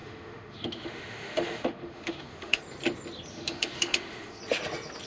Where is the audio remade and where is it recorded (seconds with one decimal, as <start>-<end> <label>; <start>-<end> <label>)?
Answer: 0.0-2.6 remade; 2.6-3.3 recorded; 3.3-4.4 remade; 4.4-5.1 recorded